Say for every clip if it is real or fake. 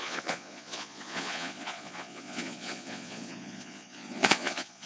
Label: fake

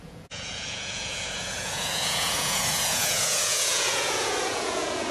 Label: fake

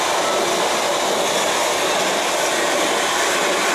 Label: real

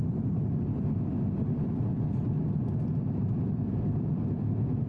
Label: real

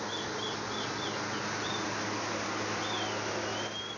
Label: real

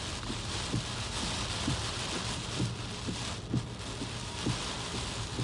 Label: real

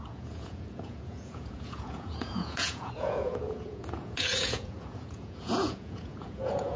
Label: fake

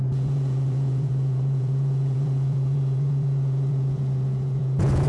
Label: fake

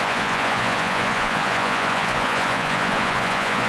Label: fake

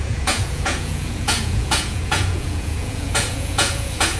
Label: fake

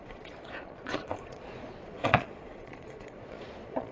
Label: fake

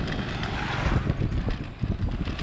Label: real